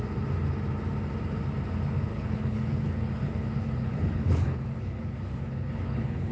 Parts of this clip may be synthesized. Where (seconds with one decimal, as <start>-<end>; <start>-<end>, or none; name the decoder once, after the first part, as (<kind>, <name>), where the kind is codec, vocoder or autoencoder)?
2.1-6.3 (codec, HILCodec)